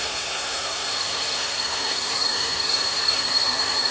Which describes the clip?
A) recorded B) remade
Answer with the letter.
B